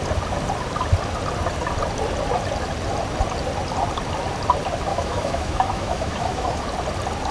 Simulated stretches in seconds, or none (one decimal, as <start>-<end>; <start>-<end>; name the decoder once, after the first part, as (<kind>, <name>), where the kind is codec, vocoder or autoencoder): 4.9-6.6 (autoencoder, DAC-VAE)